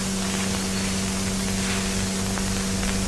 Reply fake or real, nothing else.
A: real